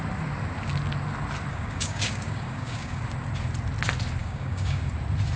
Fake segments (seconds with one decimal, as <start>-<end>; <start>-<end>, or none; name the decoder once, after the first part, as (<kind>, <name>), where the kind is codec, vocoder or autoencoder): 1.5-3.0 (codec, DAC); 4.2-4.9